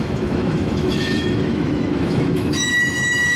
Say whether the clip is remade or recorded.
remade